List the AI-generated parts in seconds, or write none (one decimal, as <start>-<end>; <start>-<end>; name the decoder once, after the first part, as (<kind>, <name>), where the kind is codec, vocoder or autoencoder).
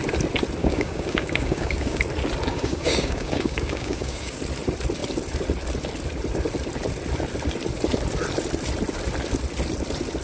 0.6-2.0 (codec, DAC); 2.5-4.4